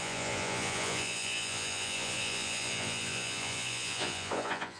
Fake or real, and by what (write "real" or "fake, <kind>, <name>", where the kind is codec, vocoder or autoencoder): fake, vocoder, Vocos